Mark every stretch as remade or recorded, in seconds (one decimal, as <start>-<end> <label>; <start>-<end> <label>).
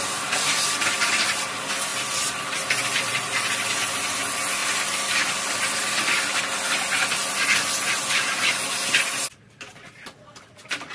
0.0-1.9 recorded; 1.9-2.4 remade; 2.4-4.6 recorded; 4.6-6.4 remade; 6.4-10.9 recorded